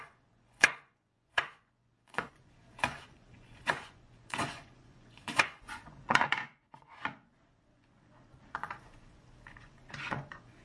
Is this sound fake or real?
fake